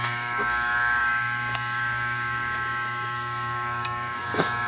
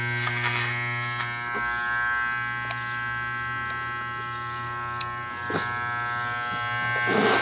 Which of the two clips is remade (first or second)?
first